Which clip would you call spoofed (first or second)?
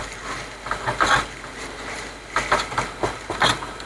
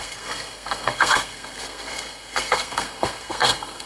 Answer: second